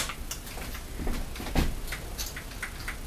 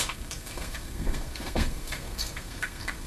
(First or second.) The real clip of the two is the first